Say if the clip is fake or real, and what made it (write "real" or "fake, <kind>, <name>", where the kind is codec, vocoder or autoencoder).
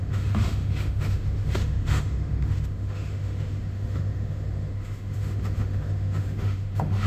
fake, autoencoder, DAC-VAE